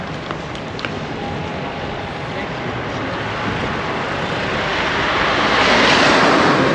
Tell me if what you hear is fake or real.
real